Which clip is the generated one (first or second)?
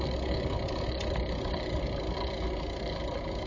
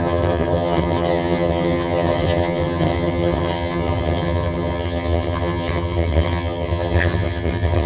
second